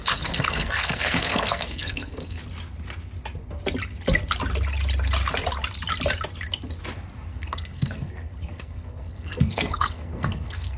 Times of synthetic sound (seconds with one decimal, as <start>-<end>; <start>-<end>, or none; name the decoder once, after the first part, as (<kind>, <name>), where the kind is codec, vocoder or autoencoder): 0.0-2.4 (codec, SNAC); 7.3-10.8